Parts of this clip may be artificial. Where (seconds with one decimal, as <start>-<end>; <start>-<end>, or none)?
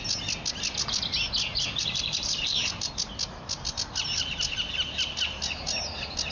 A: 1.5-2.9